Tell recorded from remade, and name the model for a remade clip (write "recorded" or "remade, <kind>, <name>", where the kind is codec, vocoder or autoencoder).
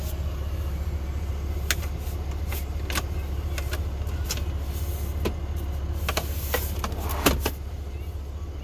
recorded